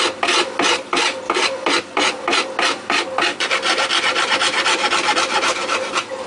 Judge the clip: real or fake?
fake